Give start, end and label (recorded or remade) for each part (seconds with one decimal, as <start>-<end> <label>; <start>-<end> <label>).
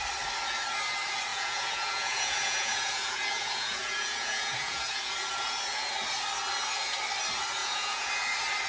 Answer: 0.0-1.3 recorded; 1.3-5.1 remade; 5.1-7.6 recorded; 7.6-8.1 remade; 8.1-8.7 recorded